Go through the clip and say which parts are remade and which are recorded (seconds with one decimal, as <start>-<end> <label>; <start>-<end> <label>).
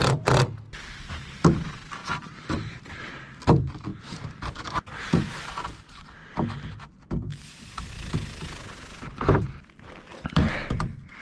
0.0-3.9 recorded; 3.9-5.6 remade; 5.6-11.2 recorded